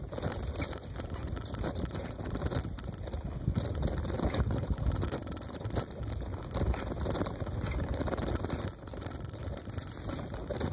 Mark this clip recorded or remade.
recorded